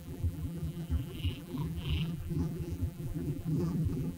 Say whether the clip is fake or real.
fake